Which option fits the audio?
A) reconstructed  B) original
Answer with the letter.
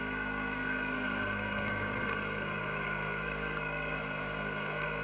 A